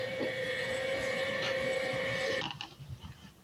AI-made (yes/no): yes